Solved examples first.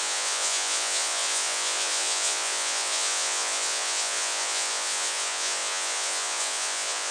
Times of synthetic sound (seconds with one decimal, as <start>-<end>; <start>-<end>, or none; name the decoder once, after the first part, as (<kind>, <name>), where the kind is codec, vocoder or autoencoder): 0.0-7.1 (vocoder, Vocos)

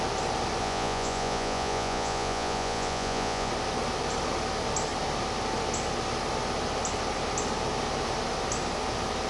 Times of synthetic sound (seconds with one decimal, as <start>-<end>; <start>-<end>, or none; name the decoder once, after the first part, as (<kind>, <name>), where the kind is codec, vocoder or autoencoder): 0.6-3.5 (vocoder, Vocos)

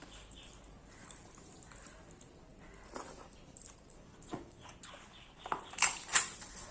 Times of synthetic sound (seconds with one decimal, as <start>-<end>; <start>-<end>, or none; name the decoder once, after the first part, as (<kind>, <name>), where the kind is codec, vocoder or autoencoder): 3.9-4.7 (vocoder, Vocos); 6.1-6.7

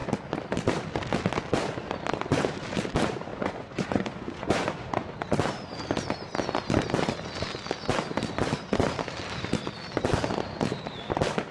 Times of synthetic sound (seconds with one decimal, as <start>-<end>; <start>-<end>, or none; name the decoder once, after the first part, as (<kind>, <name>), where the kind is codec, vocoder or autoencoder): 3.3-5.1 (vocoder, Vocos)

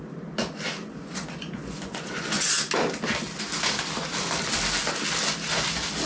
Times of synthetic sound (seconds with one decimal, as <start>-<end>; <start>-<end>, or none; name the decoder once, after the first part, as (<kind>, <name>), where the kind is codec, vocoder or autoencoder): 0.8-2.5 (vocoder, Vocos)

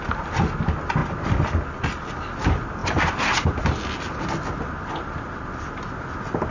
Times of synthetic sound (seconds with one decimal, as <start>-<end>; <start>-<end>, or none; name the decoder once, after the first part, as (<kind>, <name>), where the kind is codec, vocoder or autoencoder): none

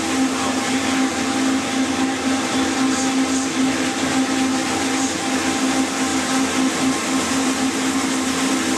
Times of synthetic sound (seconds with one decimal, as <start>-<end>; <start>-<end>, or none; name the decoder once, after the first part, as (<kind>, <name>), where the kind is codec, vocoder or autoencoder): none